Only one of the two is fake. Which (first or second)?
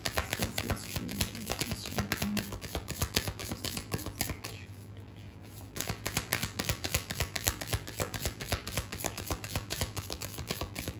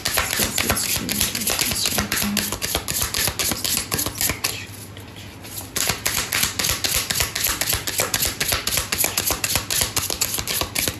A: first